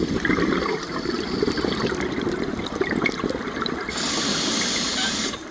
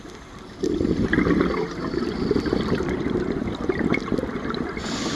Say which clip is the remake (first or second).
first